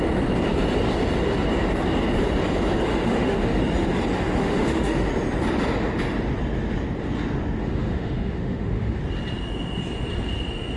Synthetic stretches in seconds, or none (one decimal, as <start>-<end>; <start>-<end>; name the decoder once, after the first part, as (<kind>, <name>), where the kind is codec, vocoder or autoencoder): 2.9-3.6 (autoencoder, DAC-VAE); 4.4-5.1; 7.6-9.0